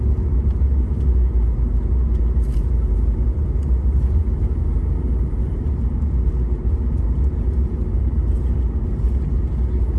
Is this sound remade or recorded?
remade